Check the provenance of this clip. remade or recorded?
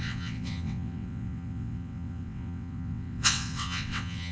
remade